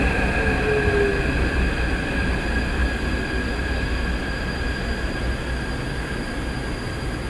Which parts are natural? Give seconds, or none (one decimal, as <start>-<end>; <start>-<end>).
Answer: 0.0-7.3